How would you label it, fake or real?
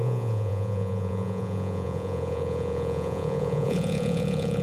fake